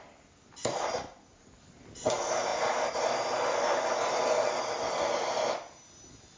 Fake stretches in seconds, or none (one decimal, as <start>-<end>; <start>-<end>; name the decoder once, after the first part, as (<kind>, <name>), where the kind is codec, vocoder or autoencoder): none